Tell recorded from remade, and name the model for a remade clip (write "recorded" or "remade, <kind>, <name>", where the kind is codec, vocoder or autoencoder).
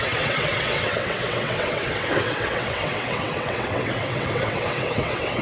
remade, vocoder, WaveNeXt